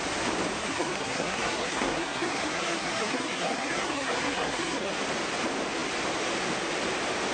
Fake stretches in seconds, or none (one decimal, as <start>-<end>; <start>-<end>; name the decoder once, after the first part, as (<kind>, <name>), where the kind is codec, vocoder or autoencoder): 0.6-4.9 (codec, SNAC)